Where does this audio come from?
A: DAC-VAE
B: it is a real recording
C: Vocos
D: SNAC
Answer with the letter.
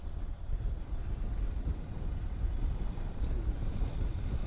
B